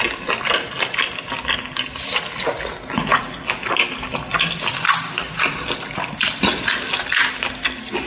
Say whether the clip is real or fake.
real